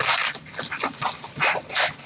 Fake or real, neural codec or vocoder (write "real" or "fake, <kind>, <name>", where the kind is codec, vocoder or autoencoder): real